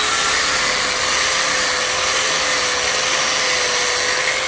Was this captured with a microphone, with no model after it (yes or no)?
yes